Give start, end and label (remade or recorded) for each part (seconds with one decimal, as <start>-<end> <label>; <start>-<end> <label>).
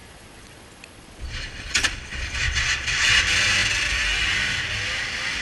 0.0-3.2 remade; 3.2-5.4 recorded